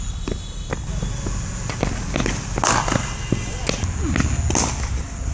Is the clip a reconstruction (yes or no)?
no